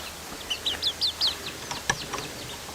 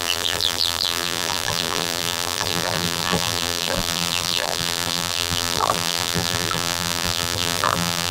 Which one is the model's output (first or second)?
second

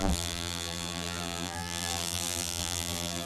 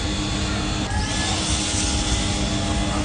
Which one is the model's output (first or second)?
first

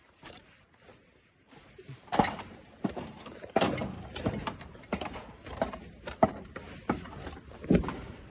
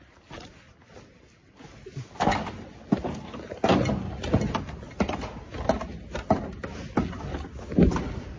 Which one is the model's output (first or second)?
first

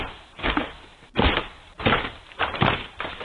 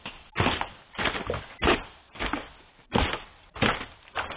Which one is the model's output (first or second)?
first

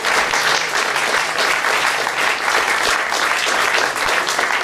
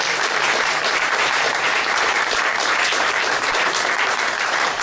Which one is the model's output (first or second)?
second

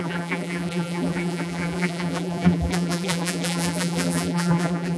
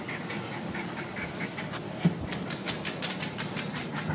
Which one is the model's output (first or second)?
first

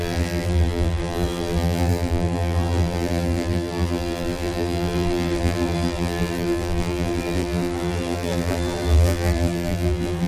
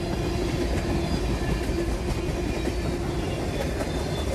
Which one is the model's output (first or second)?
first